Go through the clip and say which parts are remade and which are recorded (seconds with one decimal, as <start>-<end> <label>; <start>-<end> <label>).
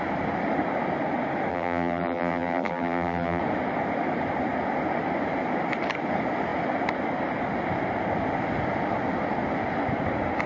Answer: 0.0-1.5 recorded; 1.5-3.4 remade; 3.4-10.5 recorded